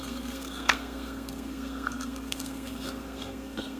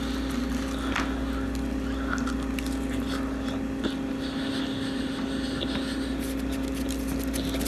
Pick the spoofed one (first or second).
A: first